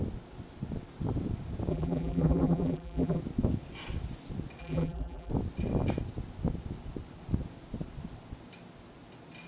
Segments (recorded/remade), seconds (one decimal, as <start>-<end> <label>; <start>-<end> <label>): 0.0-1.7 recorded; 1.7-3.2 remade; 3.2-4.6 recorded; 4.6-5.3 remade; 5.3-9.5 recorded